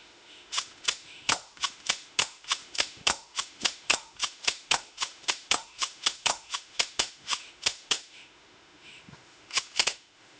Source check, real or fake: fake